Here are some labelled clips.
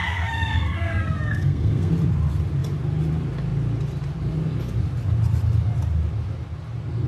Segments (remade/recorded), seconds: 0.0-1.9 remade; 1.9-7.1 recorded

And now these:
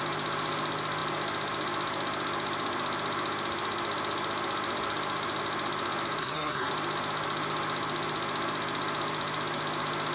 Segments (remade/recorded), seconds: 0.0-6.2 recorded; 6.2-6.7 remade; 6.7-10.1 recorded

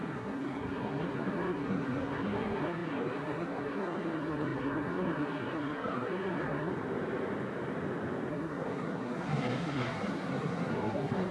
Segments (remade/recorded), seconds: 0.0-6.7 remade; 6.7-8.3 recorded; 8.3-11.3 remade

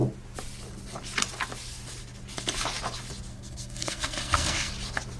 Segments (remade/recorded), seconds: 0.0-3.3 recorded; 3.3-4.7 remade; 4.7-5.2 recorded